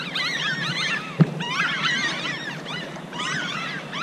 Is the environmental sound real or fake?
fake